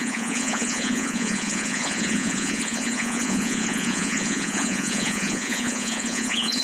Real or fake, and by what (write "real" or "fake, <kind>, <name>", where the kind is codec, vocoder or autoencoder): fake, vocoder, Vocos